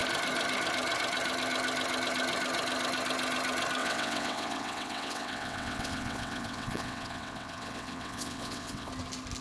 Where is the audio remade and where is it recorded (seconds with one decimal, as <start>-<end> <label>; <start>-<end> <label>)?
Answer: 0.0-3.8 recorded; 3.8-8.9 remade; 8.9-9.4 recorded

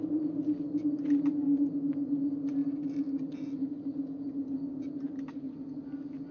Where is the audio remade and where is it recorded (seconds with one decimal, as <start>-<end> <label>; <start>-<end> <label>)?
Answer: 0.0-6.3 recorded

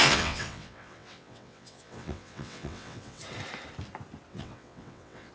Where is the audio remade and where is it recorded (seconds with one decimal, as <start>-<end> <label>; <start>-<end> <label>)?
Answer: 0.0-3.2 remade; 3.2-4.3 recorded; 4.3-5.3 remade

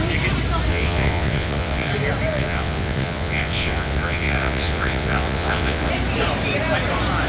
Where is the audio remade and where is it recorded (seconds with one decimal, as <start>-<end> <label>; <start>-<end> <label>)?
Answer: 0.0-0.7 recorded; 0.7-1.9 remade; 1.9-2.3 recorded; 2.3-5.9 remade; 5.9-7.3 recorded

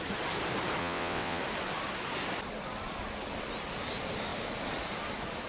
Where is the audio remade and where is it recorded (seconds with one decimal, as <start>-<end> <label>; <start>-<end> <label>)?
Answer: 0.0-0.8 recorded; 0.8-1.4 remade; 1.4-5.5 recorded

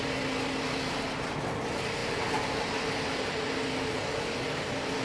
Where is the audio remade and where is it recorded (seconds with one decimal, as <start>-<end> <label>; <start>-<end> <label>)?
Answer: 0.0-5.0 recorded

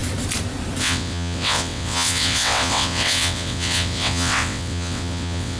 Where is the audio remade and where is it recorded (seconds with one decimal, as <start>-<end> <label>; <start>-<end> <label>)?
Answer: 0.0-0.8 recorded; 0.8-5.6 remade

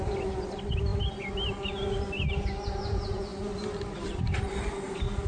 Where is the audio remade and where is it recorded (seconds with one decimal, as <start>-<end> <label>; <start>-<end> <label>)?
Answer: 0.0-5.3 recorded